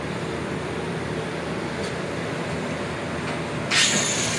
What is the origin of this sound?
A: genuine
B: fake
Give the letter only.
A